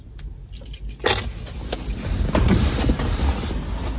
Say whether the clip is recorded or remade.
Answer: recorded